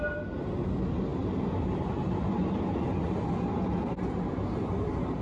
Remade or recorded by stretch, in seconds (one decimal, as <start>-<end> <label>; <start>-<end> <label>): 0.0-1.1 recorded; 1.1-4.0 remade; 4.0-5.2 recorded